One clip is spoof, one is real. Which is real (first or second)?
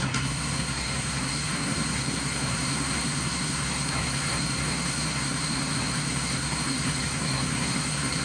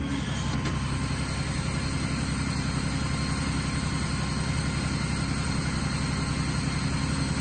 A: second